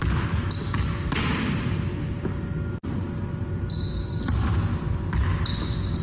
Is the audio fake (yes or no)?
no